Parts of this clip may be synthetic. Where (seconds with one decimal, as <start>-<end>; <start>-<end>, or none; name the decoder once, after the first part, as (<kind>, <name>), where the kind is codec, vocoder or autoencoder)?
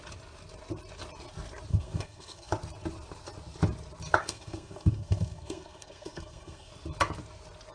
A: 1.7-2.5 (codec, SNAC); 4.2-6.7